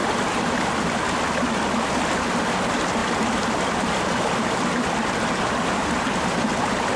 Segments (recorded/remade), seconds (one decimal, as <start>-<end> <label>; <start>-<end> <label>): 0.0-3.0 recorded; 3.0-6.5 remade; 6.5-7.0 recorded